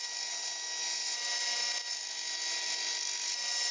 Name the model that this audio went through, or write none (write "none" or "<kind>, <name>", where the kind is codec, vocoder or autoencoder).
none